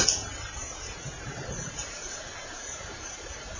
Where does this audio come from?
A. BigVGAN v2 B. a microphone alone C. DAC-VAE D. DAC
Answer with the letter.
A